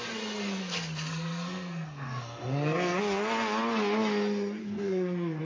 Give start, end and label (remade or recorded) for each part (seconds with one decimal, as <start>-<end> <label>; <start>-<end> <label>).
0.0-0.6 recorded; 0.6-3.0 remade; 3.0-4.6 recorded; 4.6-5.4 remade